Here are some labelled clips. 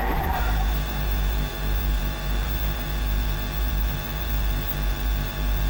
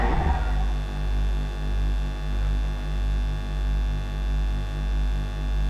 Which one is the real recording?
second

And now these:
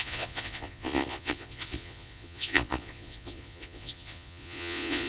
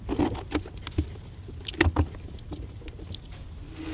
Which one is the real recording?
second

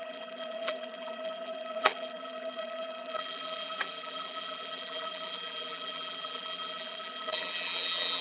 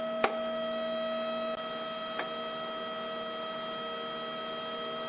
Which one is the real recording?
second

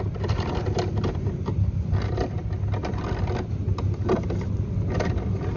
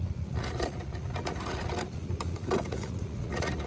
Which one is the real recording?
first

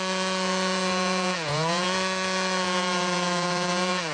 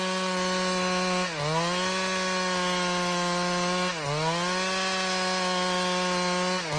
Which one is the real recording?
second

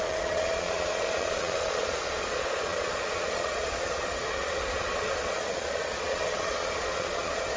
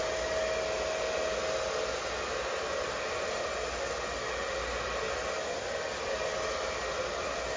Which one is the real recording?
second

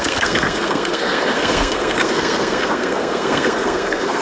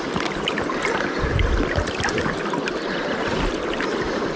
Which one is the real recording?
second